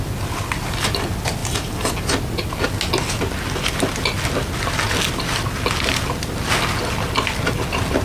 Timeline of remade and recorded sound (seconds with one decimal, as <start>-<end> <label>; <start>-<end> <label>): 0.0-8.0 recorded